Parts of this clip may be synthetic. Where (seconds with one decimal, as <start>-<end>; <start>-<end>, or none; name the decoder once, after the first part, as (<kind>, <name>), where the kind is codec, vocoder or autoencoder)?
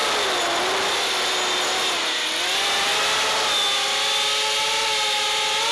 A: none